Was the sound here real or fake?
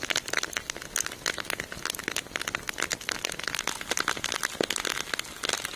real